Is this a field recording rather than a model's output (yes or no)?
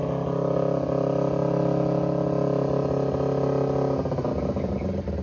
yes